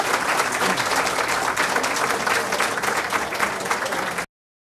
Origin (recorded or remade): recorded